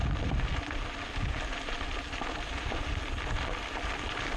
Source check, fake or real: real